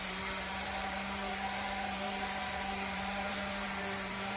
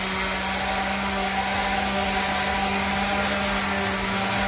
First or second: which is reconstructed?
first